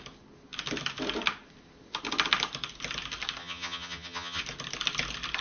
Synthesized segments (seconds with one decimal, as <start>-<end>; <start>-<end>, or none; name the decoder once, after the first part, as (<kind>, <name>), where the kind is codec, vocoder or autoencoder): 3.4-4.4 (vocoder, HiFi-GAN)